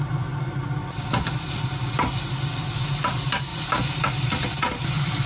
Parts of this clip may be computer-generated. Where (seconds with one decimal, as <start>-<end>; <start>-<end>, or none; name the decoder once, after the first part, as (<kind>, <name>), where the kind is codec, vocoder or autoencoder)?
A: 0.8-2.1 (vocoder, BigVGAN v2); 3.5-5.3